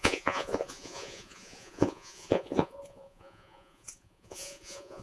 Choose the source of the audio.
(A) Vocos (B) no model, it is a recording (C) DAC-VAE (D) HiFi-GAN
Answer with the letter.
A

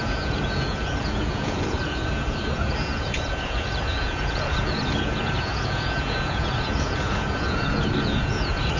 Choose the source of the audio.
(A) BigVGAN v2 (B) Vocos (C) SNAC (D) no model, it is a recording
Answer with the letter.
B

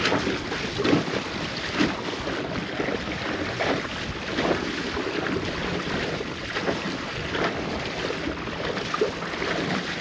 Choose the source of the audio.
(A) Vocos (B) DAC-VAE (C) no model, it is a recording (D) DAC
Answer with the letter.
C